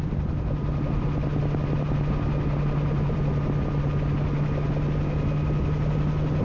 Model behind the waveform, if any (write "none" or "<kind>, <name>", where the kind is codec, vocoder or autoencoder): none